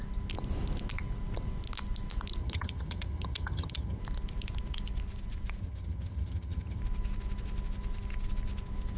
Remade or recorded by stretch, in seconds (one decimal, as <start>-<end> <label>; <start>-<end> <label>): 0.0-2.4 recorded; 2.4-4.0 remade; 4.0-5.6 recorded; 5.6-6.8 remade; 6.8-9.0 recorded